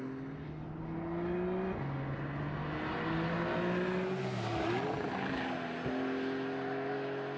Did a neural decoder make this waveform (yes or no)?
no